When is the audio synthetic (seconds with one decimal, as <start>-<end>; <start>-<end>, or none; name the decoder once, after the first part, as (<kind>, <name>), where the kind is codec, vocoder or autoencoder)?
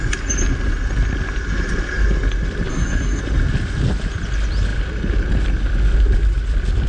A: 2.7-3.2 (codec, SNAC)